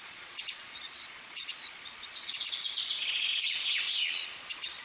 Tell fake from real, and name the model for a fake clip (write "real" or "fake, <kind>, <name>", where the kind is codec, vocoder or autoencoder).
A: fake, vocoder, Vocos